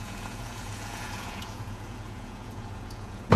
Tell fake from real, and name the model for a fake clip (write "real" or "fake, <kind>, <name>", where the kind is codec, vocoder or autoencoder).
fake, vocoder, Vocos